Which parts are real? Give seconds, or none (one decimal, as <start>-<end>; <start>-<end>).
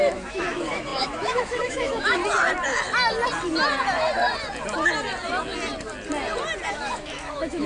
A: 2.2-6.7